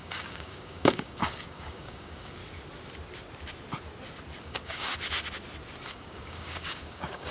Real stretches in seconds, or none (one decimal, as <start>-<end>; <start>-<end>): 2.4-4.4; 4.9-5.8